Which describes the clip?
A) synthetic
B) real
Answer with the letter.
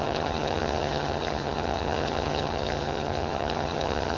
A